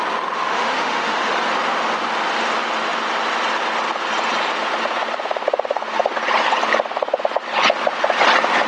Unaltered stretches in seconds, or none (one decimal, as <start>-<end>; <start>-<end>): 0.0-0.4; 1.3-8.7